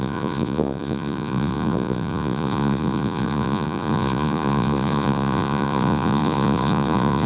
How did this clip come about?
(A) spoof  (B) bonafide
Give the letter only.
A